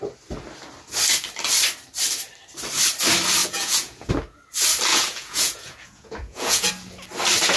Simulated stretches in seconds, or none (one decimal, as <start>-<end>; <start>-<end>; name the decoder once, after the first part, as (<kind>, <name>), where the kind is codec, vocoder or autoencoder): 3.4-4.1 (vocoder, Vocos); 4.9-6.7